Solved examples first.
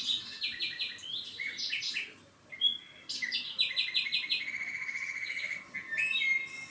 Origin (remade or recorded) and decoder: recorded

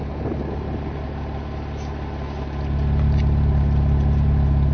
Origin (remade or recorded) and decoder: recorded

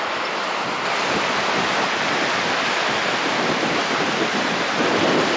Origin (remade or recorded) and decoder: recorded